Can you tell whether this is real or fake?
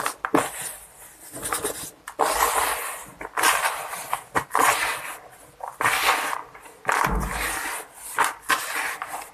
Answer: real